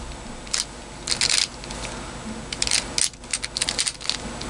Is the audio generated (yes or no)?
no